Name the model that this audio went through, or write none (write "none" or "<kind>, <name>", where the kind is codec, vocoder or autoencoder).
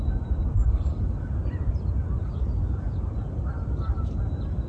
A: none